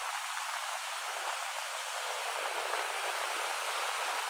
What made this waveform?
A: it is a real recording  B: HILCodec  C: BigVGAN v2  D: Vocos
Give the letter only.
A